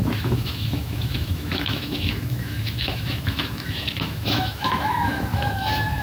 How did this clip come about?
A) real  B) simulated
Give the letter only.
B